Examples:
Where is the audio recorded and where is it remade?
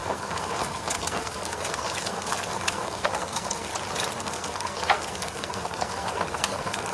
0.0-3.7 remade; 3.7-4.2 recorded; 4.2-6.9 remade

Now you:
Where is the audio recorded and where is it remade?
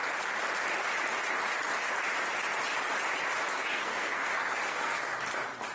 0.0-3.5 recorded; 3.5-5.0 remade; 5.0-5.7 recorded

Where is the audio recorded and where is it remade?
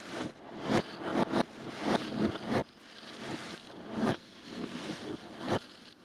0.0-4.0 recorded; 4.0-5.5 remade; 5.5-6.0 recorded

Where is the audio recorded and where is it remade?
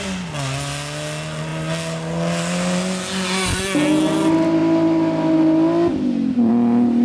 0.0-7.0 recorded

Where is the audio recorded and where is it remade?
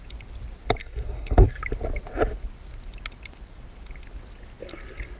0.0-0.8 recorded; 0.8-1.6 remade; 1.6-5.2 recorded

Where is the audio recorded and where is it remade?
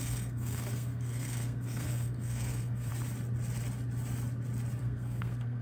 0.0-2.9 remade; 2.9-4.8 recorded; 4.8-5.6 remade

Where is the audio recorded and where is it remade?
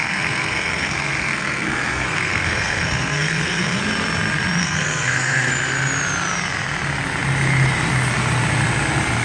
0.0-3.8 remade; 3.8-4.6 recorded; 4.6-5.5 remade; 5.5-9.2 recorded